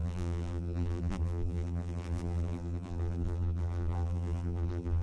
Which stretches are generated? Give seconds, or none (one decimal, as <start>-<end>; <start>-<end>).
0.0-5.0